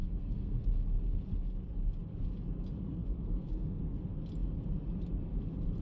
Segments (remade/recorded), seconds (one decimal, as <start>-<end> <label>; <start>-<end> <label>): 0.0-0.6 remade; 0.6-3.0 recorded; 3.0-3.8 remade; 3.8-5.8 recorded